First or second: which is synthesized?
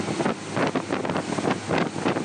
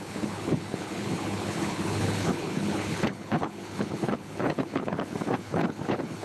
second